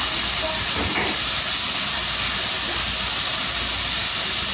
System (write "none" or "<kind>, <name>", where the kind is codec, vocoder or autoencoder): none